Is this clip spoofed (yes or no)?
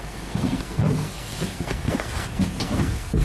yes